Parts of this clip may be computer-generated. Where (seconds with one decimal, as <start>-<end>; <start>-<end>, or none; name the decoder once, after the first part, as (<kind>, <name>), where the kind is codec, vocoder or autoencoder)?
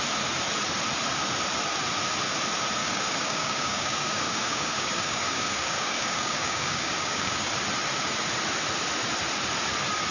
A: 2.8-7.5 (codec, DAC)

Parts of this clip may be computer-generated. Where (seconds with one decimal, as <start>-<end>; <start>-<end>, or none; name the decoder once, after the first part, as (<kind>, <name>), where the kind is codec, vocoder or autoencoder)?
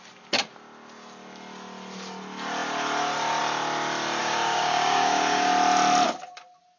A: 4.2-5.5 (codec, DAC)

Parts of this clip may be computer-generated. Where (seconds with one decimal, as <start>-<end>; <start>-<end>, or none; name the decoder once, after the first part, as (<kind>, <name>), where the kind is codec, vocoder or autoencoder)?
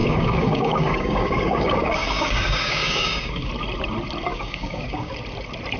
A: 0.0-3.5 (codec, DAC); 4.3-5.1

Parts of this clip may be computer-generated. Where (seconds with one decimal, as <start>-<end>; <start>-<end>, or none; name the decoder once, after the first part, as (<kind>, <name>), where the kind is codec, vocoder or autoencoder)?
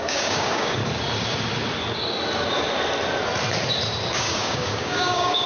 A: 0.0-0.8 (codec, DAC); 4.1-5.5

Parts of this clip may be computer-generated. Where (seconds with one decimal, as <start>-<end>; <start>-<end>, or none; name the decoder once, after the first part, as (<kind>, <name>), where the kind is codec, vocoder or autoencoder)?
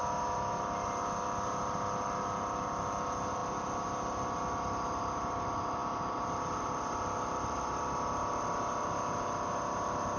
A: none